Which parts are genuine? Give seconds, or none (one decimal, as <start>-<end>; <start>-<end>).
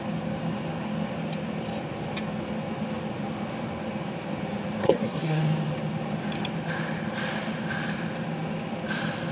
0.0-4.8; 5.4-9.3